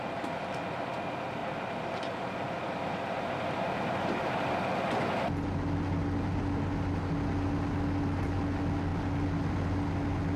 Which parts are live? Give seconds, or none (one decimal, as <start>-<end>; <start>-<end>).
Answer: 0.0-10.4